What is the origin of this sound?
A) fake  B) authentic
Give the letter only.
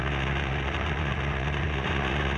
A